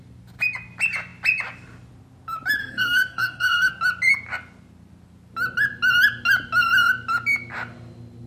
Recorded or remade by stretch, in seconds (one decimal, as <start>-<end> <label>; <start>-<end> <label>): 0.0-2.6 recorded; 2.6-3.7 remade; 3.7-8.3 recorded